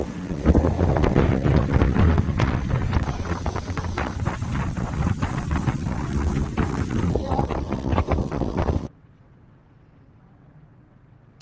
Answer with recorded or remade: remade